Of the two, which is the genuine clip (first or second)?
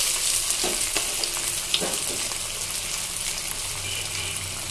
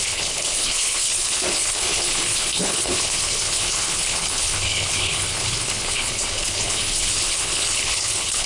first